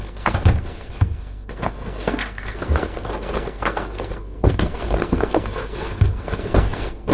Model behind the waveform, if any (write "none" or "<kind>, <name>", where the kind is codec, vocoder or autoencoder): codec, SNAC